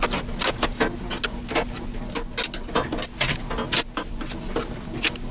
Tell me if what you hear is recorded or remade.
recorded